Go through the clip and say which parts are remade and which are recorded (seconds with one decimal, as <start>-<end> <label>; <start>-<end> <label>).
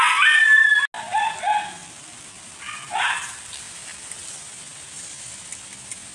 0.0-1.8 recorded; 1.8-4.0 remade; 4.0-6.1 recorded